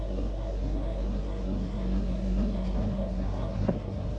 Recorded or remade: remade